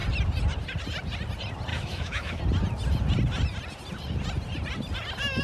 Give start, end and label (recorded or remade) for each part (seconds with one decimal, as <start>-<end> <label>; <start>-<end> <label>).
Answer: 0.0-1.7 recorded; 1.7-2.4 remade; 2.4-5.4 recorded